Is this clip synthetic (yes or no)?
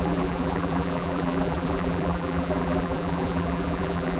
yes